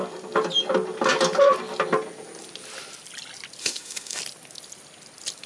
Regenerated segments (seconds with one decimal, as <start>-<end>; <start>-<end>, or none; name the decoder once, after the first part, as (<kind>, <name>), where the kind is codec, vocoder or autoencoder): 3.6-4.2 (autoencoder, DAC-VAE)